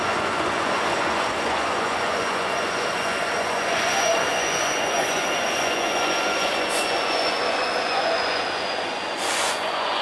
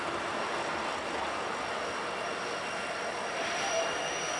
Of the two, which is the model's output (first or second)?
first